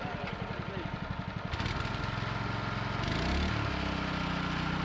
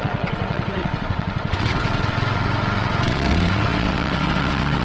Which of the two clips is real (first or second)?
first